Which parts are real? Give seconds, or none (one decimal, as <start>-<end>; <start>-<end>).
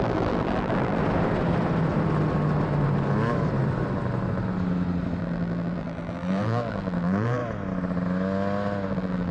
1.0-5.2; 7.4-8.9